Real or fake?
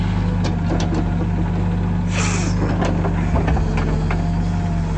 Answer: real